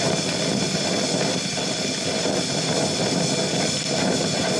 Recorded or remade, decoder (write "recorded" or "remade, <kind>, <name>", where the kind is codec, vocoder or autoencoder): recorded